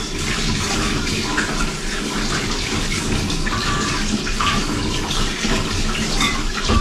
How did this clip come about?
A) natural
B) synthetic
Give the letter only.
B